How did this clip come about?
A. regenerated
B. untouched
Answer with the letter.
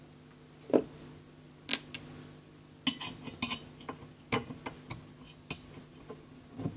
B